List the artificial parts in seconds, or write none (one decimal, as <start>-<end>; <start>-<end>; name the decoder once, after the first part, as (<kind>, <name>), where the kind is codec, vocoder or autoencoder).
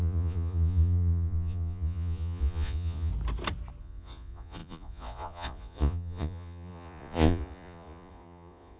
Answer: 0.0-3.1 (vocoder, Vocos); 3.8-8.8